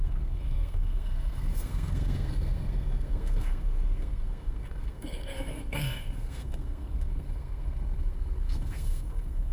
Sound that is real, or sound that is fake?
fake